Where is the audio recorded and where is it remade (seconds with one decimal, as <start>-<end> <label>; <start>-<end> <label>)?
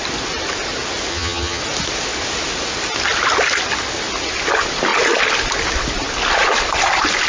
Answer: 0.0-1.1 recorded; 1.1-1.6 remade; 1.6-7.3 recorded